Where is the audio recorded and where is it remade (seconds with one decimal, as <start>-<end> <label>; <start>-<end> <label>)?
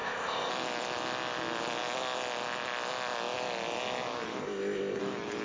0.0-0.5 remade; 0.5-4.4 recorded; 4.4-5.0 remade; 5.0-5.4 recorded